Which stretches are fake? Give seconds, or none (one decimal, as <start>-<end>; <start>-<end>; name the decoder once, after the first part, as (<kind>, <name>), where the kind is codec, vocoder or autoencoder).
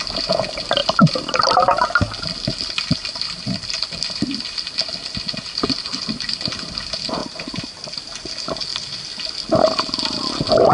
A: 0.8-1.4 (vocoder, BigVGAN v2); 8.7-9.2